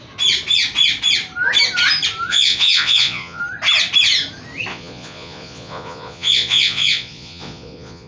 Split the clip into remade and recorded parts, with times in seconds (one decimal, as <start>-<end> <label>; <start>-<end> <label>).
0.0-2.3 recorded; 2.3-3.4 remade; 3.4-4.7 recorded; 4.7-8.1 remade

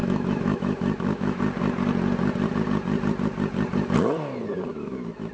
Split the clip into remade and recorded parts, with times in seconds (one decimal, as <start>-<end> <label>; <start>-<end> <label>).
0.0-1.4 remade; 1.4-4.7 recorded; 4.7-5.3 remade

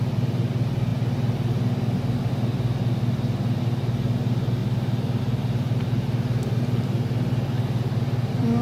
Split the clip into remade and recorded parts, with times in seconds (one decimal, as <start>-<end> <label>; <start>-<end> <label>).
0.0-8.6 recorded

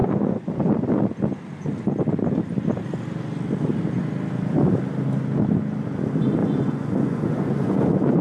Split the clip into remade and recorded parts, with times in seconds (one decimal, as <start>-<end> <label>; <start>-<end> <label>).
0.0-0.5 remade; 0.5-6.4 recorded; 6.4-8.2 remade

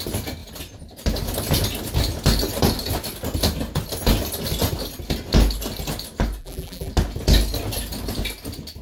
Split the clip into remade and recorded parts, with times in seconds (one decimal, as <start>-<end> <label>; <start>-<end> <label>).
0.0-6.4 recorded; 6.4-6.9 remade; 6.9-8.8 recorded

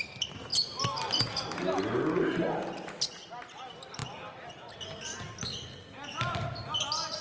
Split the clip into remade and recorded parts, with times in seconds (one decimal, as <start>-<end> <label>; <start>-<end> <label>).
0.0-7.2 recorded